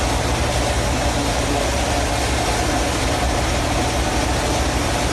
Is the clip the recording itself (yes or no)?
yes